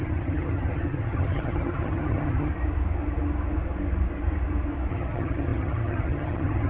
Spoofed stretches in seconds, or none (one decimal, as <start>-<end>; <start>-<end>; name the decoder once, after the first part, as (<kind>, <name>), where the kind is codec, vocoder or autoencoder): 0.0-2.5 (vocoder, HiFi-GAN); 4.9-6.7